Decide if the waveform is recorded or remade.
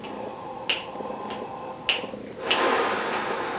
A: recorded